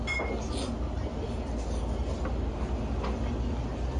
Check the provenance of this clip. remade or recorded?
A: recorded